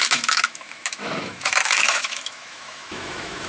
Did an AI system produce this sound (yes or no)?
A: yes